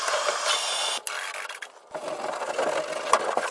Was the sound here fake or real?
real